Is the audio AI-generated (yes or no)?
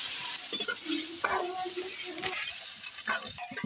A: no